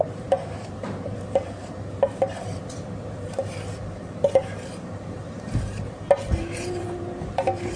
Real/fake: fake